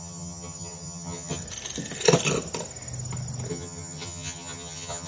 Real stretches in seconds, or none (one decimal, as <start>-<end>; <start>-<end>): 1.4-3.5

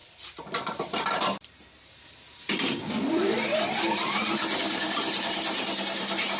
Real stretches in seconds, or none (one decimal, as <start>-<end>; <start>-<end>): none

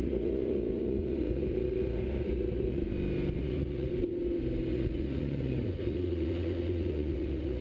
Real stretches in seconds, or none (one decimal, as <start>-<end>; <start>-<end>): 2.8-3.4; 3.9-4.7

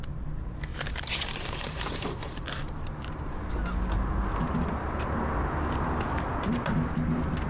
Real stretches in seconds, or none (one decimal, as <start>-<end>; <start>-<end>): 0.0-0.7; 3.5-7.5

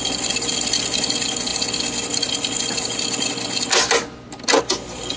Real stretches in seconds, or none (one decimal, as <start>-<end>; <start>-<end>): 0.0-5.2

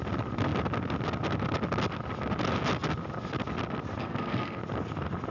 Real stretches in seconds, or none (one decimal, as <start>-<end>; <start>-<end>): 0.0-4.0; 4.6-5.3